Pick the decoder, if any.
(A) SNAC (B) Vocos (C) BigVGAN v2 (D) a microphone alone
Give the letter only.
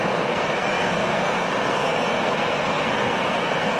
A